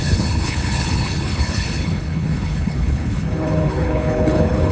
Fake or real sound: fake